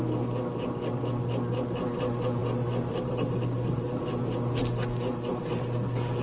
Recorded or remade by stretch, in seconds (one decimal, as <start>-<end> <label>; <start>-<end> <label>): 0.0-6.2 recorded